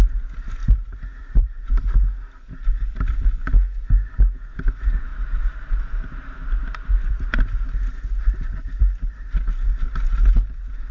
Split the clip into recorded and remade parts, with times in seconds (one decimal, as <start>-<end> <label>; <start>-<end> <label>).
0.0-0.6 recorded; 0.6-1.6 remade; 1.6-10.9 recorded